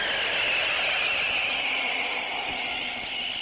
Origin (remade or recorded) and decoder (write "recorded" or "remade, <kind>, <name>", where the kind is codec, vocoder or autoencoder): recorded